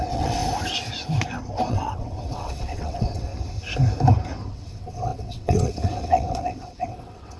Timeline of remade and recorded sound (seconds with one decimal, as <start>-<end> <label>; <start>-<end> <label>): 0.0-0.4 remade; 0.4-1.7 recorded; 1.7-3.3 remade; 3.3-4.5 recorded; 4.5-7.4 remade